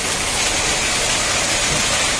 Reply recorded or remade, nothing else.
recorded